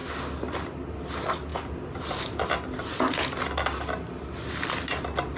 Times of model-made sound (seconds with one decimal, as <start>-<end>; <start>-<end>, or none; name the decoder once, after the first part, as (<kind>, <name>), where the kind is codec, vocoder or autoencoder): none